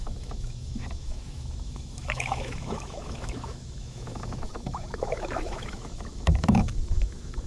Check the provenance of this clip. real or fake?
fake